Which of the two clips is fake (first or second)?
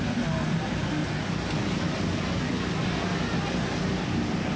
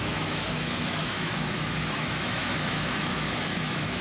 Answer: second